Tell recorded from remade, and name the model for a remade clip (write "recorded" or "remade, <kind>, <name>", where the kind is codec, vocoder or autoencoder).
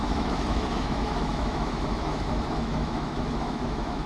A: remade, autoencoder, DAC-VAE